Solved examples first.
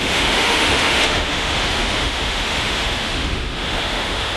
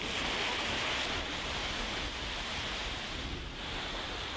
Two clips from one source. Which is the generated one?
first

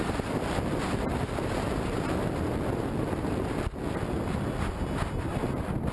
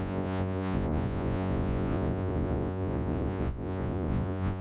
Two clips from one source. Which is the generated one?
second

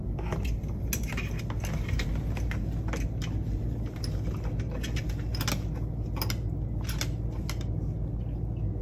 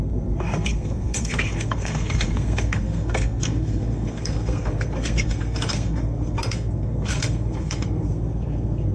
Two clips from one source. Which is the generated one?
second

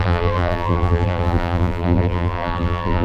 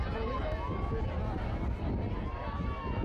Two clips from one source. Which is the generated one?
first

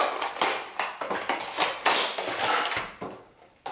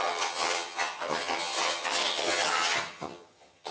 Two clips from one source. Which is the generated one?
second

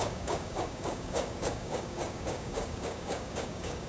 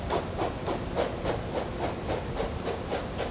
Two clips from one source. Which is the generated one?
first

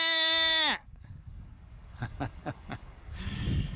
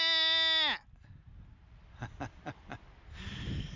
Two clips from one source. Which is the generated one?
first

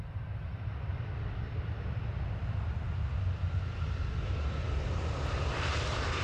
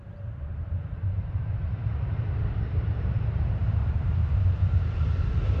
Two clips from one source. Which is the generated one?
second